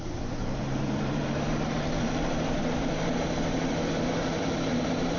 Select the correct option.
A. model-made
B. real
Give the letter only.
A